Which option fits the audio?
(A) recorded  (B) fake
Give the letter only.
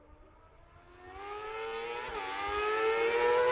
A